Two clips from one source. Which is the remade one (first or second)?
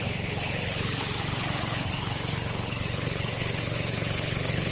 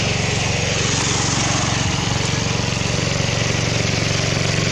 first